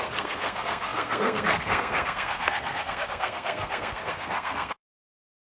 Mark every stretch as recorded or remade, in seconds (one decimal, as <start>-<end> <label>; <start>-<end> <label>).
0.0-5.4 remade